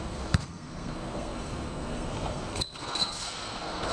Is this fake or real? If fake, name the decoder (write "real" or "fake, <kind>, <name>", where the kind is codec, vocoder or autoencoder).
fake, codec, SNAC